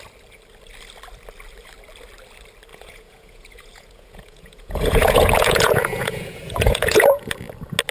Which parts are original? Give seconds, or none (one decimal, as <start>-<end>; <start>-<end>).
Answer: 0.0-2.7; 7.4-7.9